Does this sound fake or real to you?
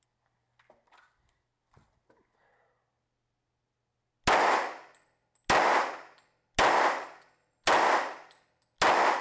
real